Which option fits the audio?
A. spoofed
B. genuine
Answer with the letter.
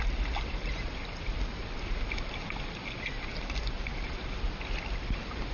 B